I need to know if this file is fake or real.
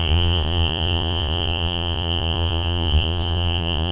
fake